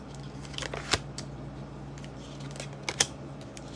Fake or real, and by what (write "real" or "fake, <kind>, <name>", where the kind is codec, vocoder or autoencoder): real